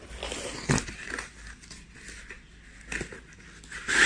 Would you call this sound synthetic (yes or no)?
no